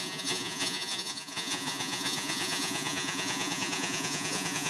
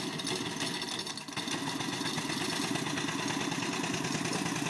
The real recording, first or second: second